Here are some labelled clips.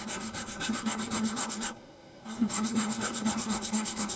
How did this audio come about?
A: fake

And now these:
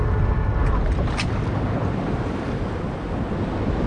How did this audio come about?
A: real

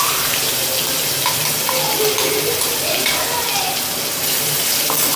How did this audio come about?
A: real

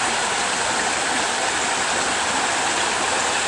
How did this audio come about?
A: real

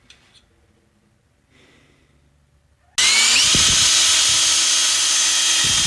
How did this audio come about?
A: real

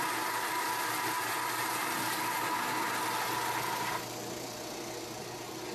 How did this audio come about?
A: real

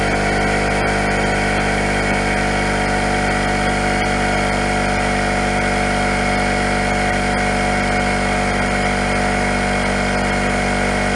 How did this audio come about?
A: real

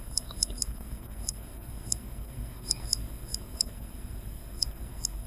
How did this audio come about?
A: fake